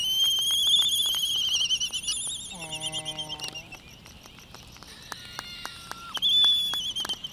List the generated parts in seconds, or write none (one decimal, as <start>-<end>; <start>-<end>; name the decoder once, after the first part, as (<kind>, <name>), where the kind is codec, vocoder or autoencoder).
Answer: none